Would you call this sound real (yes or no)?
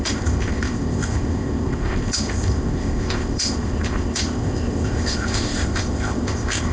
no